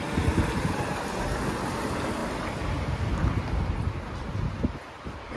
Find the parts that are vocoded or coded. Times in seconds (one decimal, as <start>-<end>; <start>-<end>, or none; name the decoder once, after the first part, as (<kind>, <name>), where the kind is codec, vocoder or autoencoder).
none

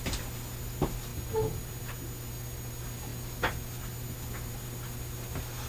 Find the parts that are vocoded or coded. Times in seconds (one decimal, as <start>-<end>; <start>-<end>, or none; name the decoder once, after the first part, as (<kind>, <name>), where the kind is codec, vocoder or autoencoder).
none

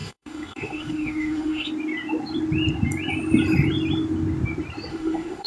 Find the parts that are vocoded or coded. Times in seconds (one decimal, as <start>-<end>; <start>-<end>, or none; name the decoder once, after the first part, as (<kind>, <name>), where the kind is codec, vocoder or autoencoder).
0.0-1.7 (autoencoder, DAC-VAE); 4.9-5.5